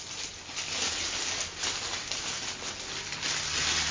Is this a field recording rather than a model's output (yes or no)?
yes